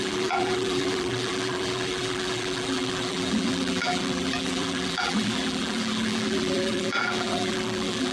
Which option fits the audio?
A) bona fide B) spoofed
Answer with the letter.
B